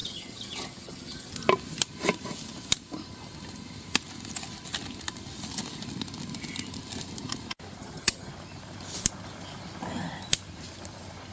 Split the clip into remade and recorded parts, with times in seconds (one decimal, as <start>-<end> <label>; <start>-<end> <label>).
0.0-1.3 remade; 1.3-7.8 recorded; 7.8-8.3 remade; 8.3-11.3 recorded